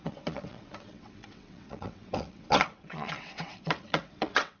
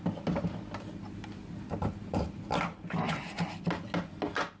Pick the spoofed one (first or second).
first